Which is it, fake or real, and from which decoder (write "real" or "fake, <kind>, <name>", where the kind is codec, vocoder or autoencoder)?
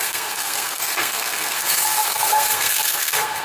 fake, codec, SNAC